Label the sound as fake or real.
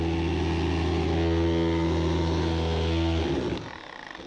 real